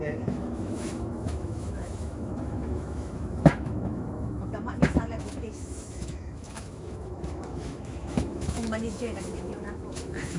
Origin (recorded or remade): remade